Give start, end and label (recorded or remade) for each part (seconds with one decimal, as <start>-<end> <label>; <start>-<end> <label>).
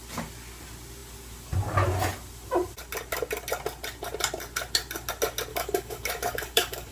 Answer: 0.0-5.5 recorded; 5.5-6.9 remade